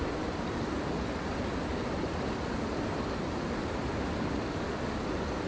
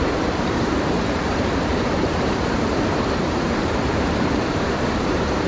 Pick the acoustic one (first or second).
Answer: first